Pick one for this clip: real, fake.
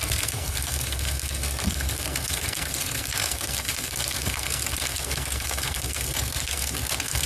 fake